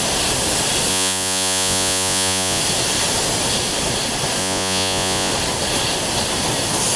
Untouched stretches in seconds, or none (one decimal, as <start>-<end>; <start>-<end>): 0.0-0.9; 2.6-4.4; 5.3-7.0